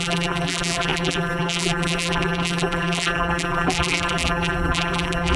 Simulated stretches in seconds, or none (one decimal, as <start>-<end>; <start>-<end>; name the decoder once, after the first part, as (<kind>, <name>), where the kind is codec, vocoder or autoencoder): 0.0-5.4 (vocoder, BigVGAN v2)